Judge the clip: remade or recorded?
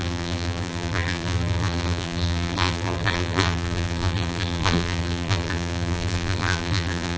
remade